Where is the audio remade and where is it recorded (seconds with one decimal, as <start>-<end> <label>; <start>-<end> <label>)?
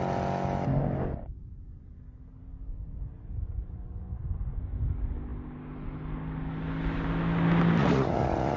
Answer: 0.0-7.8 recorded; 7.8-8.6 remade